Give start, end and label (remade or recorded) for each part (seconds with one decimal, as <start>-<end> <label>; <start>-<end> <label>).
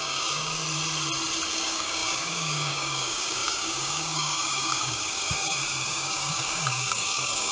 0.0-0.6 remade; 0.6-1.5 recorded; 1.5-7.5 remade